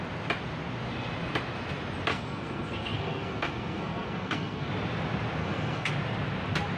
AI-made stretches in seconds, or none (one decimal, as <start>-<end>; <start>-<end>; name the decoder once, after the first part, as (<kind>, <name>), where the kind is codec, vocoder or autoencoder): 2.1-4.7 (codec, SNAC); 5.4-5.9